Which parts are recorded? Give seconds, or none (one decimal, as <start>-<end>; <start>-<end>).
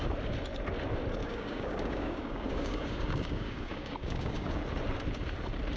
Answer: 0.0-1.2; 4.6-5.8